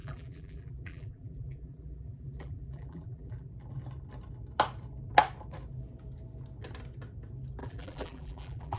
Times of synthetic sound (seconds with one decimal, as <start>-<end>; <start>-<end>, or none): 0.0-3.5; 7.6-8.8